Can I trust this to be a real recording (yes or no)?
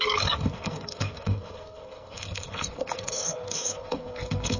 no